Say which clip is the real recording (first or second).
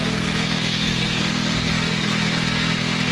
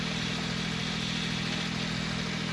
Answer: second